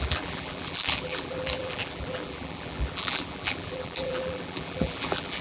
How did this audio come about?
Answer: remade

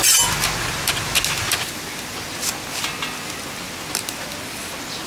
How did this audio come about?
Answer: recorded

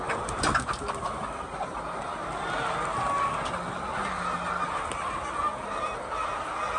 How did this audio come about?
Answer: recorded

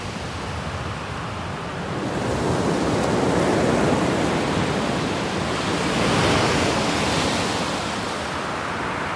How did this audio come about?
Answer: recorded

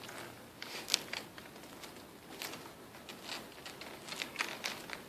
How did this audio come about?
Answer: recorded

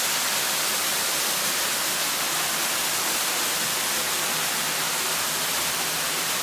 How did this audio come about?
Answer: recorded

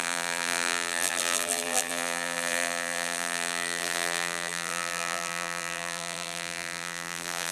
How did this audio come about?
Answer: remade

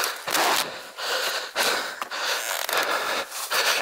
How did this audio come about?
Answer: recorded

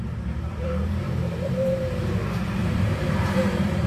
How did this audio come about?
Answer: remade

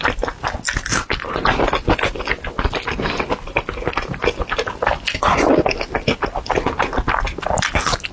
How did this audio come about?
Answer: recorded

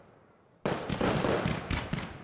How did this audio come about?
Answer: remade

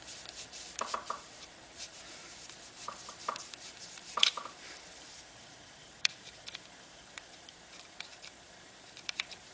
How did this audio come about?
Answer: remade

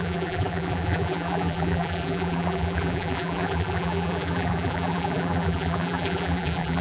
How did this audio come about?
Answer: remade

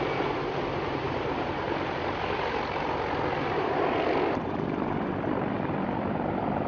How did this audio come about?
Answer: remade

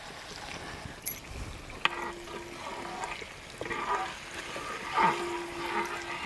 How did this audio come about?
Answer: recorded